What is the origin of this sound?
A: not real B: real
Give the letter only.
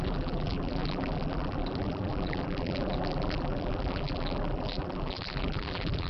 A